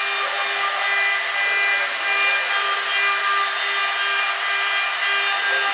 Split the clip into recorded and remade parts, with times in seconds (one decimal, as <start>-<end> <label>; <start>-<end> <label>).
0.0-5.7 recorded